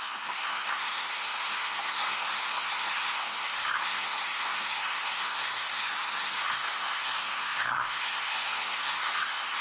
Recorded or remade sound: remade